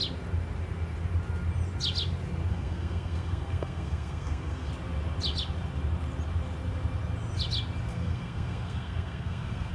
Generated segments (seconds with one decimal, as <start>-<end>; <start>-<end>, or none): 2.5-4.7; 7.9-9.7